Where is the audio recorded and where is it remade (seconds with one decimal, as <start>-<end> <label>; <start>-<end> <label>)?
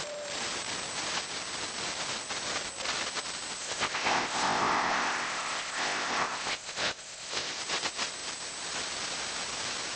0.0-3.6 recorded; 3.6-7.6 remade; 7.6-10.0 recorded